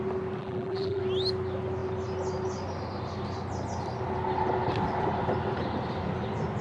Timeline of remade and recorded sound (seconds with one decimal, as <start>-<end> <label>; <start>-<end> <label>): 0.0-0.4 recorded; 0.4-1.0 remade; 1.0-6.6 recorded